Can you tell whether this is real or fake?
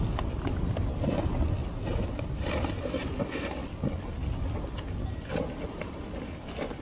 real